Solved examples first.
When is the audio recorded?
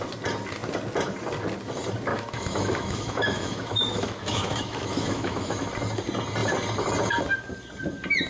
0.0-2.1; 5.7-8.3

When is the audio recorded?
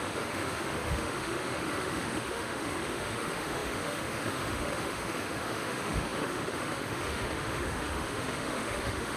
none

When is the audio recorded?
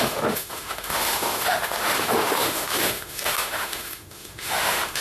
none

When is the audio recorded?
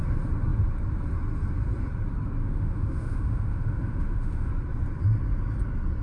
0.0-2.4; 4.5-6.0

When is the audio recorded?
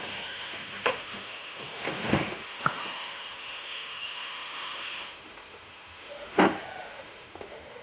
none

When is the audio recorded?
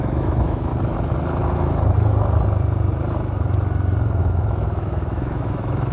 0.7-4.2